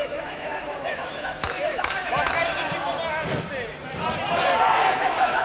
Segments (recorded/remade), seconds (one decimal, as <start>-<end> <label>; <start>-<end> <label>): 0.0-2.3 remade; 2.3-5.0 recorded; 5.0-5.4 remade